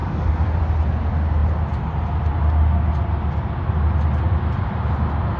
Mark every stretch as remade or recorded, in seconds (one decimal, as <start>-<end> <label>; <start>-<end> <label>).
0.0-0.6 remade; 0.6-5.4 recorded